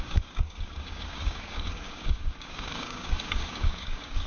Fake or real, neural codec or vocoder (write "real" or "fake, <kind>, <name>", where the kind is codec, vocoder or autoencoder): fake, codec, DAC